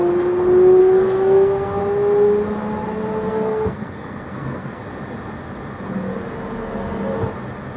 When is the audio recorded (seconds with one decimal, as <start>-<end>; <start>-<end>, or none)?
0.0-0.8; 1.8-3.3; 4.8-7.8